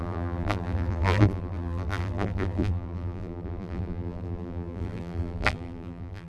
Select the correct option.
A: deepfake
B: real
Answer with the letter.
A